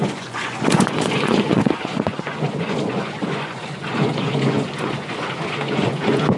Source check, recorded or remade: remade